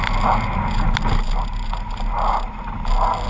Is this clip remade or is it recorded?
recorded